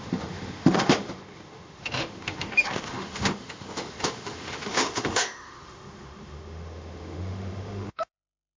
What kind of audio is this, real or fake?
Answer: fake